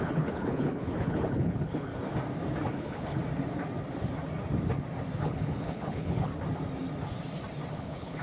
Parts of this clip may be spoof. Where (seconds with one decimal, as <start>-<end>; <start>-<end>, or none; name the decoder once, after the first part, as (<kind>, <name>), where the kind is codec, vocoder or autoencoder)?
0.0-1.9 (codec, HILCodec); 2.7-3.2; 5.2-6.3; 7.7-8.2